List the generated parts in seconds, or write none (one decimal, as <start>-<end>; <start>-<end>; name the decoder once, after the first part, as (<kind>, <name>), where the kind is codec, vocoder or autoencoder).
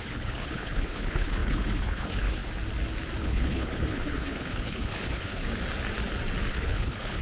0.0-2.4 (codec, HILCodec); 3.2-5.4; 6.5-7.2